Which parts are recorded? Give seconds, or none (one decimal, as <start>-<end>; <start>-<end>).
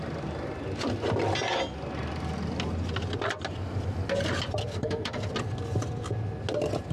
0.0-4.6; 5.3-6.9